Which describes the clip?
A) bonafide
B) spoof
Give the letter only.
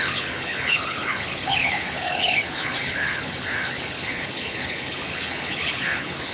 B